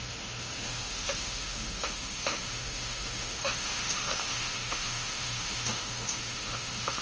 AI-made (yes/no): yes